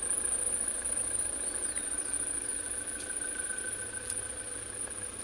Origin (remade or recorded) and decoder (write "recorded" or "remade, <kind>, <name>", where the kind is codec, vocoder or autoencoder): recorded